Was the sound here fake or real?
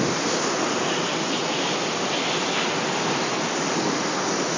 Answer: real